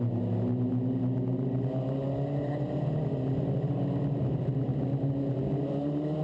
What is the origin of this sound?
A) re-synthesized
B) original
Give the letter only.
B